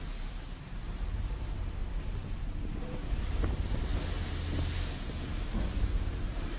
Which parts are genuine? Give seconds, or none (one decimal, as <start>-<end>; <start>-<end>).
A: 1.8-2.4; 3.9-5.1